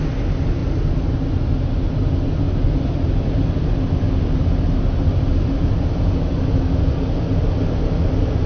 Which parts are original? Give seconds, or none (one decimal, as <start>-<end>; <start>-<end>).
0.0-8.5